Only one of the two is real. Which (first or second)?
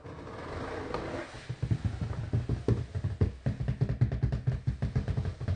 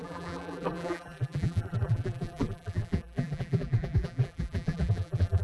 first